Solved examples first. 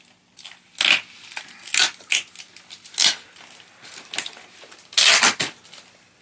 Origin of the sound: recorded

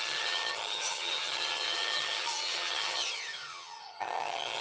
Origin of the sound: remade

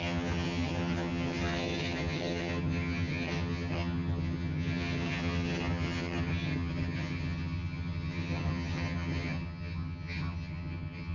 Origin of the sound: remade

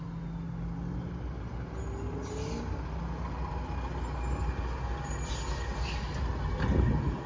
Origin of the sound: recorded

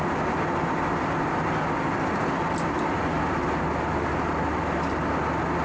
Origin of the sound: recorded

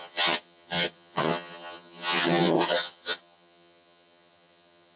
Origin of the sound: remade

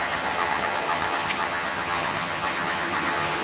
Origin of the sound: remade